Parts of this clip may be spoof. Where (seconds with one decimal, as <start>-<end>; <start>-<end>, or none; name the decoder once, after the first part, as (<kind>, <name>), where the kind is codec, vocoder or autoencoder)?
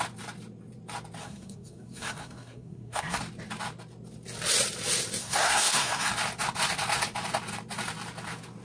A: 1.2-3.2 (codec, SNAC); 5.2-6.1